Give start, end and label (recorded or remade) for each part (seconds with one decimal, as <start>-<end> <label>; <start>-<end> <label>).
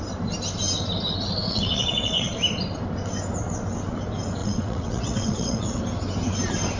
0.0-1.5 recorded; 1.5-2.3 remade; 2.3-4.4 recorded; 4.4-5.8 remade; 5.8-6.8 recorded